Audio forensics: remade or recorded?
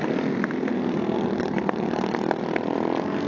recorded